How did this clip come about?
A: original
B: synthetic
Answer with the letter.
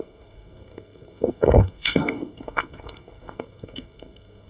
B